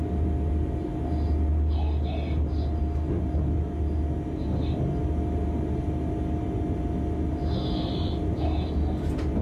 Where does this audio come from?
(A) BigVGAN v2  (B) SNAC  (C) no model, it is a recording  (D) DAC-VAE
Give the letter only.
C